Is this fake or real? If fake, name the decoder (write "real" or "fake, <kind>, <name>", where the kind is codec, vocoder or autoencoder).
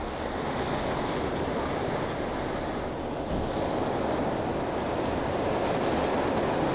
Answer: real